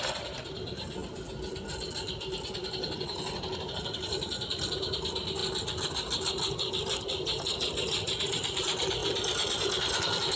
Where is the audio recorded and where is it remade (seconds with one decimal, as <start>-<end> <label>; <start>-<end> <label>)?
0.0-10.4 recorded